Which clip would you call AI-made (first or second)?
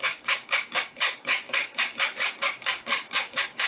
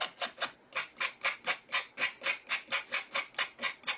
first